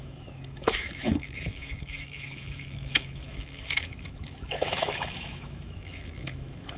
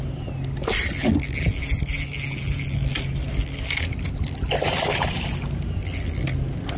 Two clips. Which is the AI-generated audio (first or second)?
first